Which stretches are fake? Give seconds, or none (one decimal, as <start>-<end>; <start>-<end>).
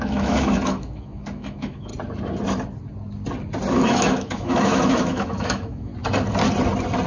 0.0-1.9; 3.7-5.9